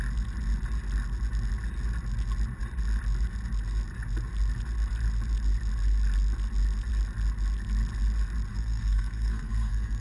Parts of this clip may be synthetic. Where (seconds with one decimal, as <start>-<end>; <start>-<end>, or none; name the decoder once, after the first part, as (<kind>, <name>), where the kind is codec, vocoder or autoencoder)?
8.5-10.0 (codec, SNAC)